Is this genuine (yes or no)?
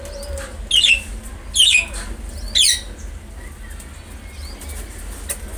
yes